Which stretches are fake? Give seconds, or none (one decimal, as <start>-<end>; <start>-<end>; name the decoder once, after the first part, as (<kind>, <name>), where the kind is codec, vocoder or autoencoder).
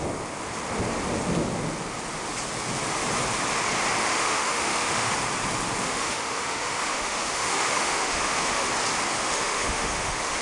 4.0-5.1 (autoencoder, DAC-VAE); 5.8-8.7; 9.1-10.4